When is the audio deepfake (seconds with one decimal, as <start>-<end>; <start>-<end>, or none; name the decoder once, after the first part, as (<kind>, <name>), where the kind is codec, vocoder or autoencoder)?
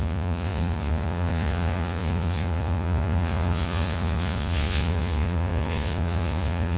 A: 0.0-6.8 (vocoder, Vocos)